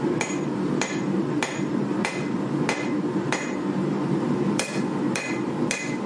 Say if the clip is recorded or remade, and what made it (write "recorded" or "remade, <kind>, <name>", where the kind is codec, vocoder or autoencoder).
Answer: recorded